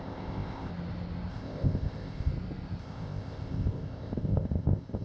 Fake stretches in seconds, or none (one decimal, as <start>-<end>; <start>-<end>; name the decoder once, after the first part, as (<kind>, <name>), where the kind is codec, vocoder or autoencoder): 0.0-0.7 (codec, ZipCodec); 1.3-2.3; 2.8-5.0